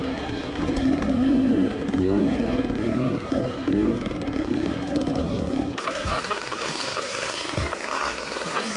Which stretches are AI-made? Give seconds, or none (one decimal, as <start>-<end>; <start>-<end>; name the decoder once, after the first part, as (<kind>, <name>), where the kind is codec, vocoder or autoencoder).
0.0-8.8 (codec, SNAC)